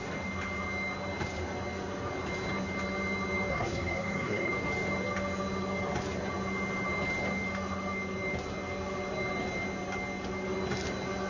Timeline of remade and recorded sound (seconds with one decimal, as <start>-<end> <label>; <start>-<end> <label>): 0.0-3.5 recorded; 3.5-4.5 remade; 4.5-11.3 recorded